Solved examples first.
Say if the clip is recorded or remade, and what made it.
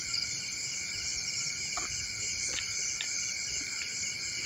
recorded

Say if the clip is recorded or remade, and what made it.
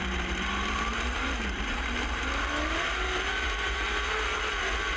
recorded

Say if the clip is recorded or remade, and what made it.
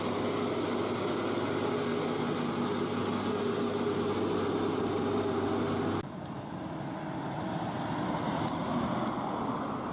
recorded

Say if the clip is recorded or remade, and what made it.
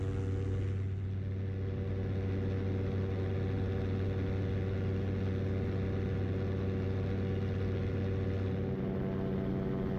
recorded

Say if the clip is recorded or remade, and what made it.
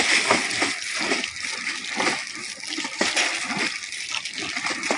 recorded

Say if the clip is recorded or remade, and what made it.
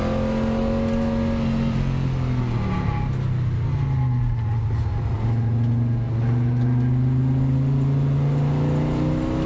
recorded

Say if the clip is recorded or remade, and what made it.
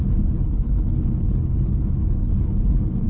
remade, codec, HILCodec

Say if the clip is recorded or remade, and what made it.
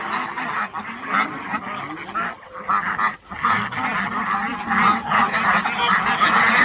recorded